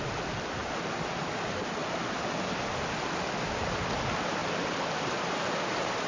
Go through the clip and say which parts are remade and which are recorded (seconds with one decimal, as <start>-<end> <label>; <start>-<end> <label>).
0.0-0.6 recorded; 0.6-1.3 remade; 1.3-4.4 recorded; 4.4-5.4 remade; 5.4-6.1 recorded